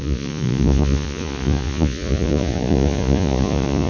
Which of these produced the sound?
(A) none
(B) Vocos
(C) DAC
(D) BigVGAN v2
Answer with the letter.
B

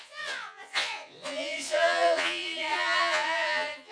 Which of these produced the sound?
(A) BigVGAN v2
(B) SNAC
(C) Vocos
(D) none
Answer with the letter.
C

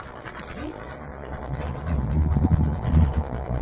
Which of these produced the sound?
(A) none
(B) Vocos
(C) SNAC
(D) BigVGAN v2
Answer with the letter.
B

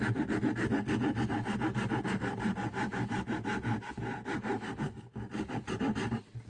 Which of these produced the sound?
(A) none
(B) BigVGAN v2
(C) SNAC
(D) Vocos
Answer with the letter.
A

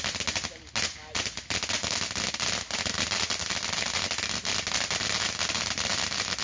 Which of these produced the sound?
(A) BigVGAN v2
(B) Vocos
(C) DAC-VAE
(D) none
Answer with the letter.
D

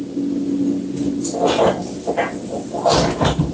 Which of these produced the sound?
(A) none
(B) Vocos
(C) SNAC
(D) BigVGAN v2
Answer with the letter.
A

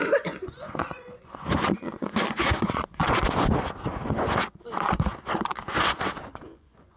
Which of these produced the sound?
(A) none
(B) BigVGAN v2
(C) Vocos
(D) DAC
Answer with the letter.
C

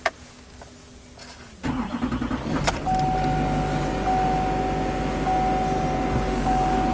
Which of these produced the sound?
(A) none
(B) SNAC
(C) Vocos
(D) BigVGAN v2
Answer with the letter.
A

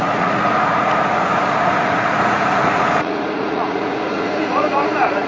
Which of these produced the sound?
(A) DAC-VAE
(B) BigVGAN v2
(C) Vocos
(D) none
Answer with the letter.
C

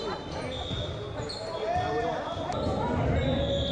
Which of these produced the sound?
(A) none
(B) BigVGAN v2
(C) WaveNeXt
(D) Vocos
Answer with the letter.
A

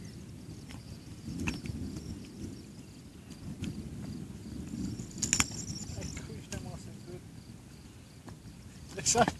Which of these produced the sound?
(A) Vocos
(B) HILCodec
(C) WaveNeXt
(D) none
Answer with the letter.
D